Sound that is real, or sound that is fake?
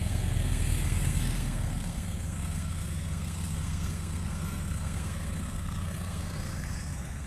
fake